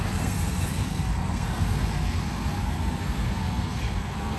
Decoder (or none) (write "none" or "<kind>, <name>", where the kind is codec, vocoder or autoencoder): codec, SNAC